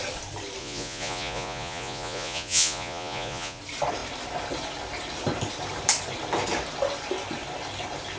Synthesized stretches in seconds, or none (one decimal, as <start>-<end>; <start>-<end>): 0.6-3.6